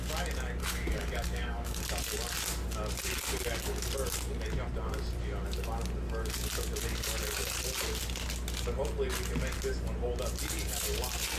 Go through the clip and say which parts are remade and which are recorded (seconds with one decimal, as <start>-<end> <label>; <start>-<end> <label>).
0.0-0.6 recorded; 0.6-1.8 remade; 1.8-11.4 recorded